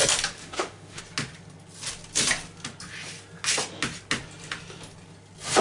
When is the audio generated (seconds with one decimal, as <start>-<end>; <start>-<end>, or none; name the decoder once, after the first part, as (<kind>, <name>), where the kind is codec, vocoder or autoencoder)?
0.4-1.0 (autoencoder, DAC-VAE)